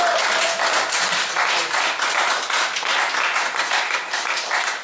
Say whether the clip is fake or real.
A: real